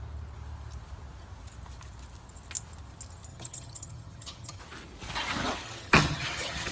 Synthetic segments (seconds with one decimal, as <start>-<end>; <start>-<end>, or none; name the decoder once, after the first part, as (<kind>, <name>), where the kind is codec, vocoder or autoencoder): 3.3-4.6 (vocoder, HiFi-GAN); 5.6-6.7